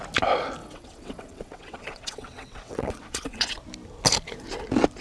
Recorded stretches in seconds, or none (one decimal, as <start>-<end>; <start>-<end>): 0.0-0.6; 3.6-5.0